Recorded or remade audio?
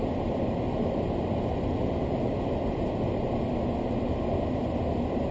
recorded